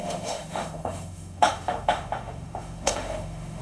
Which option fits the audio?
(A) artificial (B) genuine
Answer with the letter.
A